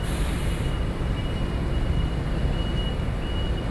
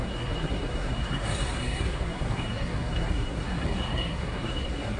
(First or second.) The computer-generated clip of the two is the second